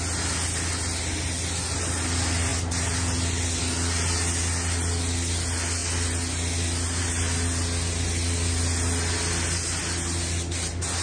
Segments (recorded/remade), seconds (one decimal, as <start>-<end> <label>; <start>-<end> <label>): 0.0-11.0 recorded